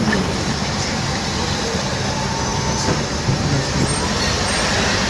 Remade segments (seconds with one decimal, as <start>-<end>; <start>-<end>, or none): 0.0-2.5; 4.6-5.1